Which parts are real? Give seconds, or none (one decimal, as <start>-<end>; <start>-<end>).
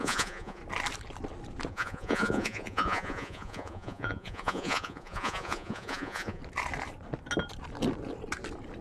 0.6-1.7; 6.4-8.8